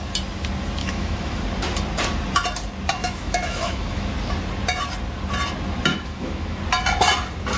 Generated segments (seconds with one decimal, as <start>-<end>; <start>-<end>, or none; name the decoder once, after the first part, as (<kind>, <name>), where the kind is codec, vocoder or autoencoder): 0.8-1.4 (autoencoder, DAC-VAE); 3.0-4.1; 5.9-6.6